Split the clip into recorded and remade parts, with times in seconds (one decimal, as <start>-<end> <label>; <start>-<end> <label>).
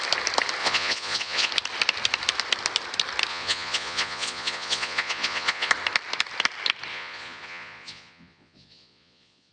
0.0-0.6 recorded; 0.6-1.5 remade; 1.5-3.3 recorded; 3.3-5.7 remade; 5.7-6.9 recorded; 6.9-9.5 remade